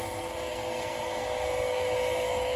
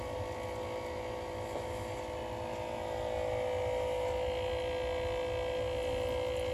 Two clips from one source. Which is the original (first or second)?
second